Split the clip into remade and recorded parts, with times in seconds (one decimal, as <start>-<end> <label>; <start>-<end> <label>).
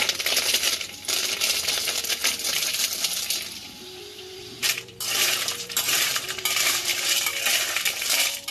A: 0.0-2.2 remade; 2.2-3.5 recorded; 3.5-6.9 remade; 6.9-7.7 recorded; 7.7-8.5 remade